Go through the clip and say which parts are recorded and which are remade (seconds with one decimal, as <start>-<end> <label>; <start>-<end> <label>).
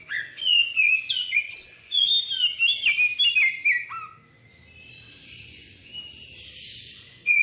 0.0-2.1 remade; 2.1-5.1 recorded; 5.1-5.9 remade; 5.9-6.8 recorded; 6.8-7.4 remade